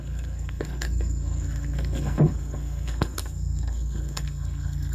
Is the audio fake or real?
fake